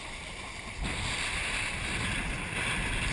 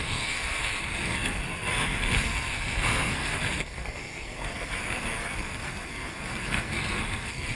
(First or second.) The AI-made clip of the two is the second